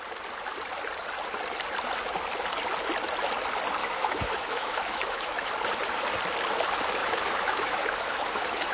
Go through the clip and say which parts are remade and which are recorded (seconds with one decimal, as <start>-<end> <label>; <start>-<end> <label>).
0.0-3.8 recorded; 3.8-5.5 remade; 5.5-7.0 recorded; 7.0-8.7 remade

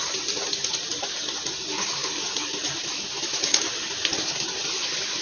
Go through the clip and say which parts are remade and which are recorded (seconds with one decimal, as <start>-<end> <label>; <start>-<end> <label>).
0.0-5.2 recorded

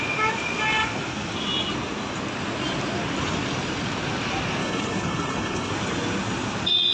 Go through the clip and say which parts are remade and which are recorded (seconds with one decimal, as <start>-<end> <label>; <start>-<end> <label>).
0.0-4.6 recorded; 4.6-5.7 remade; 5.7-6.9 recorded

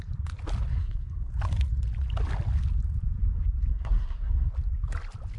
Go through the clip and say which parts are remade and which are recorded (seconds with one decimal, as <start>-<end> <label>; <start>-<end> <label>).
0.0-0.7 recorded; 0.7-1.3 remade; 1.3-3.7 recorded; 3.7-4.5 remade; 4.5-5.4 recorded

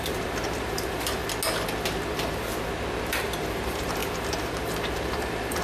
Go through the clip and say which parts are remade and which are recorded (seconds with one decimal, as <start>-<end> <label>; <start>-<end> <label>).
0.0-1.2 remade; 1.2-2.1 recorded; 2.1-2.5 remade; 2.5-3.1 recorded; 3.1-5.6 remade

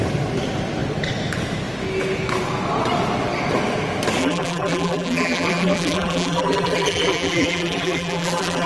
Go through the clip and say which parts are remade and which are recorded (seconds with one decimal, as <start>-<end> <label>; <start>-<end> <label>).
0.0-4.2 recorded; 4.2-8.7 remade

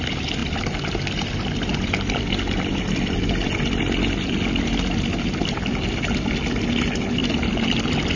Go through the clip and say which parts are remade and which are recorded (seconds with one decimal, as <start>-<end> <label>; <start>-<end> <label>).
0.0-8.2 recorded